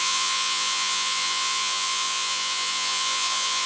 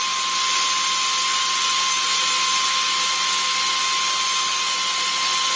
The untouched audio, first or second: second